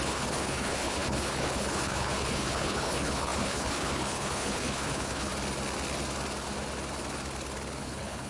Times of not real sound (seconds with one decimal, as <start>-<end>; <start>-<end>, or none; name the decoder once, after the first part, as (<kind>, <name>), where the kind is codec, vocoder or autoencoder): 0.0-5.3 (codec, HILCodec); 7.8-8.3